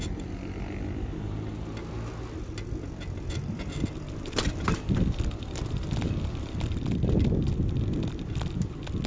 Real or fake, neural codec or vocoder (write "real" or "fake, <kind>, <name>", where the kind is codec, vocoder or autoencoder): real